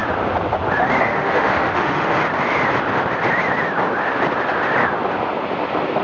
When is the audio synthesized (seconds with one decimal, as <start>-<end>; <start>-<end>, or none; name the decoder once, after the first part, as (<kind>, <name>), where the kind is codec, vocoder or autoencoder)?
1.0-2.2 (autoencoder, DAC-VAE)